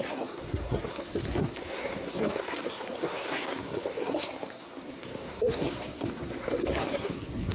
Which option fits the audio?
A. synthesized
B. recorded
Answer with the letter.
A